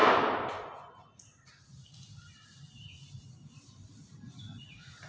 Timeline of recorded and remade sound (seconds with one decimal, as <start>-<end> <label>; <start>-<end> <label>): 0.0-5.1 recorded